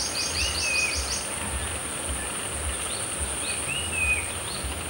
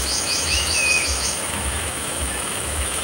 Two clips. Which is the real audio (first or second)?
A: first